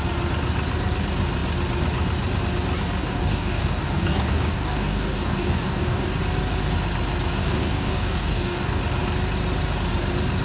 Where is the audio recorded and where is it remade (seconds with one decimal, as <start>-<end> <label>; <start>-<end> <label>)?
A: 0.0-3.0 recorded; 3.0-6.2 remade; 6.2-7.4 recorded; 7.4-8.8 remade; 8.8-10.4 recorded